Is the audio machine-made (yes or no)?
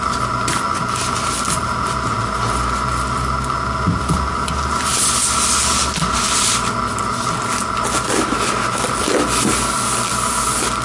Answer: no